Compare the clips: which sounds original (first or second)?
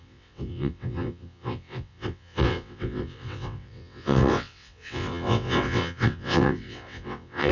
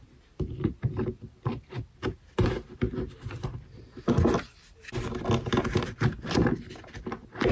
second